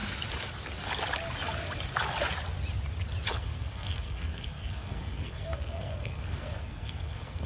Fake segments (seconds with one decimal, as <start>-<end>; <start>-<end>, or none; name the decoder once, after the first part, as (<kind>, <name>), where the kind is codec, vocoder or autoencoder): 3.3-7.5 (codec, SNAC)